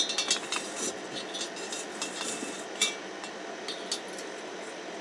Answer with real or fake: real